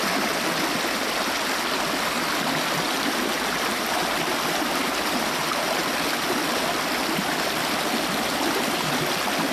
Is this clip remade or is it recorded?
recorded